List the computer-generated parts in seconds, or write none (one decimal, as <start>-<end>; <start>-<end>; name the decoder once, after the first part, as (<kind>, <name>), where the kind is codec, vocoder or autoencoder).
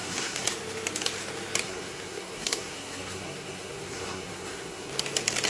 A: 0.0-0.5 (codec, SNAC); 1.6-4.9